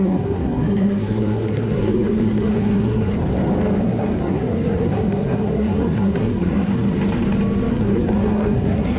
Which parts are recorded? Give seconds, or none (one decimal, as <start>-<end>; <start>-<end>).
3.2-3.8; 6.7-7.7